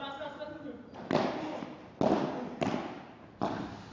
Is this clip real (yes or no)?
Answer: yes